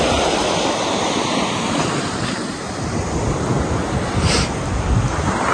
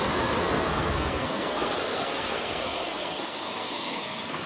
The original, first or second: first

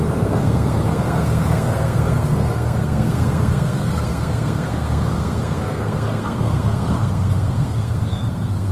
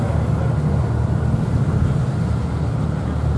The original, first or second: second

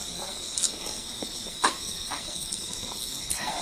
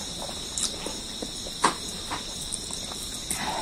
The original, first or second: second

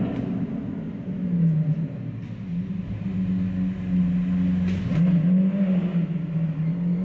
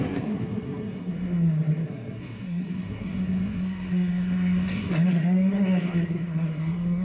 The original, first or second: first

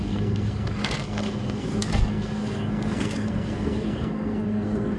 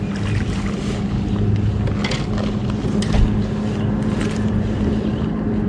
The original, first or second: second